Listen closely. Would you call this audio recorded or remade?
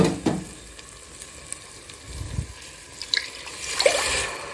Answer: recorded